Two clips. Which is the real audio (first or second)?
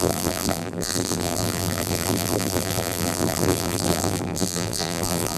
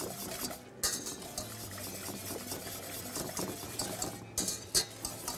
second